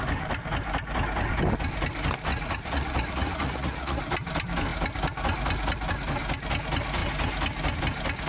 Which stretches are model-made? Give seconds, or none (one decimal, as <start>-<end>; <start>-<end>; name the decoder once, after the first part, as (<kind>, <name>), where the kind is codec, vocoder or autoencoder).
2.3-4.0 (vocoder, Vocos)